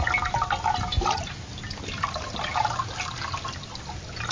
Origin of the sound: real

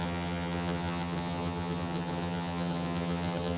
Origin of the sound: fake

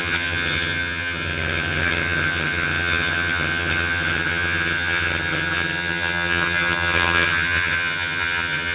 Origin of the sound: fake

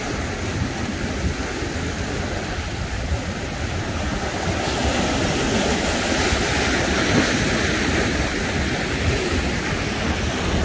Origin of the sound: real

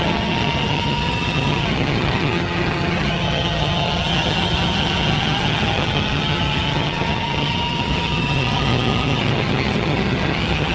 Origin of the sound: fake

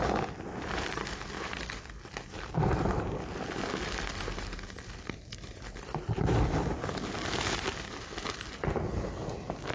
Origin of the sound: real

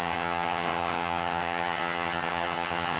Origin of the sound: fake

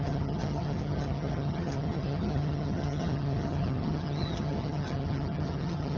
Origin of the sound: fake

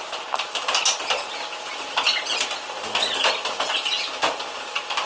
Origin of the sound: real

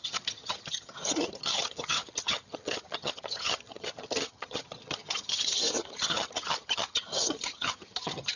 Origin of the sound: fake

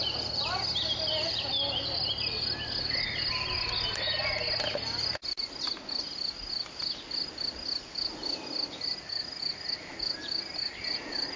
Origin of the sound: real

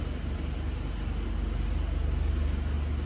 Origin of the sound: real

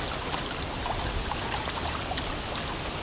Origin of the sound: real